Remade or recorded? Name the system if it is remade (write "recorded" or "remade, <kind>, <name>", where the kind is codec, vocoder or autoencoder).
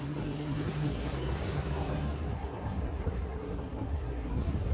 remade, codec, SNAC